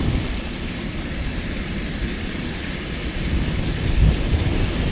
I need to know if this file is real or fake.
fake